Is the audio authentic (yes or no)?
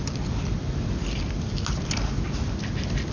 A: yes